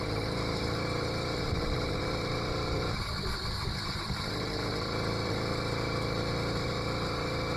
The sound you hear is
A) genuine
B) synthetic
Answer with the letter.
B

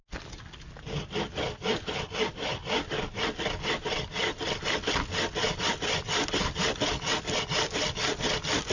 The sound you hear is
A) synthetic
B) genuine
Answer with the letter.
B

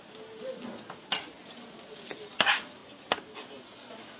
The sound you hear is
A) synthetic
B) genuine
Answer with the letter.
B